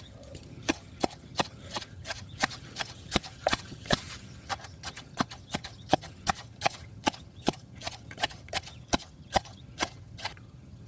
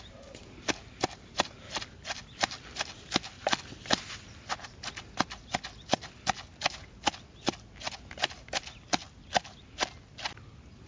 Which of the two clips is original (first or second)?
second